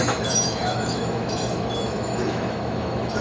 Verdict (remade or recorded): remade